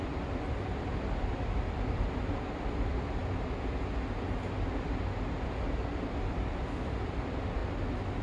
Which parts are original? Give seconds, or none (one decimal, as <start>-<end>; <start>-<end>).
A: 3.2-5.9; 7.6-8.2